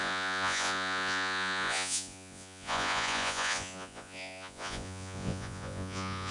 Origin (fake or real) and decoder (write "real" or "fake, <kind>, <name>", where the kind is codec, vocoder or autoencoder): fake, vocoder, Vocos